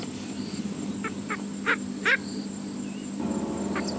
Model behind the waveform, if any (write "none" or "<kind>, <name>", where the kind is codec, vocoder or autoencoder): none